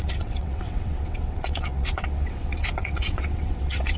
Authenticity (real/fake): fake